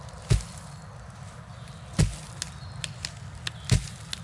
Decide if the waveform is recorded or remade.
recorded